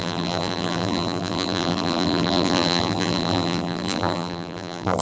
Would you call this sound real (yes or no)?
no